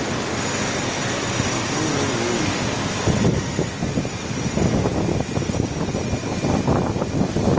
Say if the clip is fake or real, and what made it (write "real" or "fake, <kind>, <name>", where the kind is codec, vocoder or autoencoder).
real